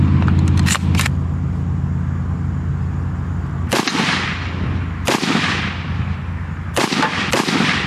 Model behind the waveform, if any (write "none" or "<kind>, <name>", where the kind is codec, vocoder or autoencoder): none